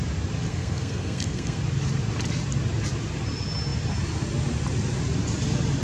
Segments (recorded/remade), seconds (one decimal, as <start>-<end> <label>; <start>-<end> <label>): 0.0-0.5 recorded; 0.5-1.6 remade; 1.6-5.8 recorded